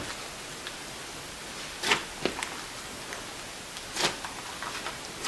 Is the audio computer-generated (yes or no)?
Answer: no